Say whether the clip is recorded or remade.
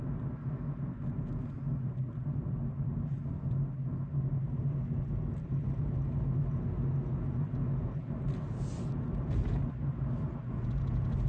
recorded